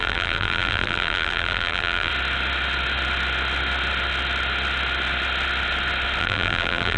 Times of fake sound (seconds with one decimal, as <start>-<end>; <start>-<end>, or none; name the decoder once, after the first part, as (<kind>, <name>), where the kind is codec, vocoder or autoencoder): 0.0-2.1 (vocoder, BigVGAN v2); 6.2-7.0

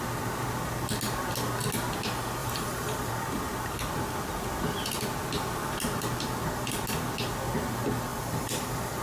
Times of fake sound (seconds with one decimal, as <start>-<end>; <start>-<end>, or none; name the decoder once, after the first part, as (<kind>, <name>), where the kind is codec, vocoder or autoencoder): 2.4-3.1 (vocoder, BigVGAN v2); 8.1-9.0

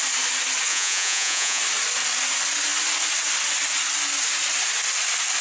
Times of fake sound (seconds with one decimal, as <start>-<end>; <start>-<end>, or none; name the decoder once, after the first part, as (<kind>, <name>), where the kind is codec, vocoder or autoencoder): 0.7-1.6 (vocoder, Vocos)

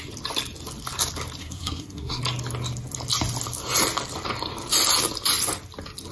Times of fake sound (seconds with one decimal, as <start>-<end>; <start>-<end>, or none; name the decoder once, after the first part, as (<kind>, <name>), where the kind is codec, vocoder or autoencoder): 1.4-2.2 (codec, SNAC)